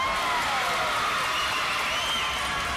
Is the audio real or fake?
real